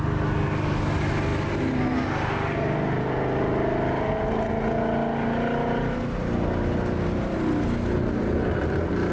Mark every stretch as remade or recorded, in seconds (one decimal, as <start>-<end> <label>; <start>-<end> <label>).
0.0-9.1 recorded

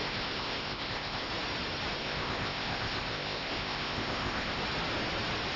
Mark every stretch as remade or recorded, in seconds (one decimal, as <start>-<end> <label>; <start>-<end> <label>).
0.0-1.3 remade; 1.3-2.0 recorded; 2.0-4.6 remade; 4.6-5.6 recorded